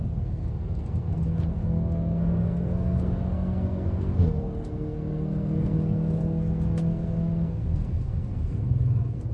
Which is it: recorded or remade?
remade